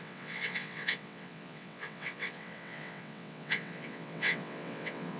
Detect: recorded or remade remade